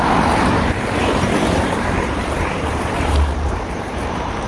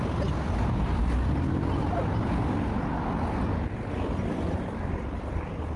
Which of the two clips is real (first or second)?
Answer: second